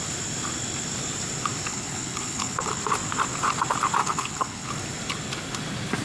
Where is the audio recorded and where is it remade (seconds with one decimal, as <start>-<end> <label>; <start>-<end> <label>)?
0.0-1.7 recorded; 1.7-2.8 remade; 2.8-4.0 recorded; 4.0-4.7 remade; 4.7-6.0 recorded